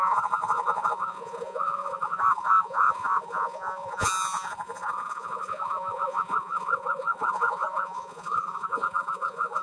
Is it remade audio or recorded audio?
remade